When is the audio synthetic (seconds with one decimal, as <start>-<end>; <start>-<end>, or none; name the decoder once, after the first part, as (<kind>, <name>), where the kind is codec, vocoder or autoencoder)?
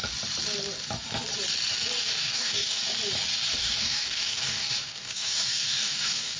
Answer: 2.0-2.8 (codec, DAC); 3.6-6.4